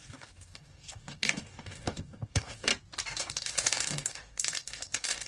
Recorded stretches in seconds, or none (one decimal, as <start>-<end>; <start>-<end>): 2.7-3.2